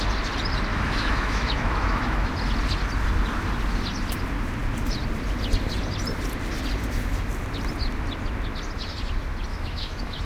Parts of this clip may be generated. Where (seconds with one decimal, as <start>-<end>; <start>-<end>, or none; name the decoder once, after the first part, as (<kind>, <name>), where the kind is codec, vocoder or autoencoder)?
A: 0.7-2.3 (autoencoder, DAC-VAE); 9.5-10.2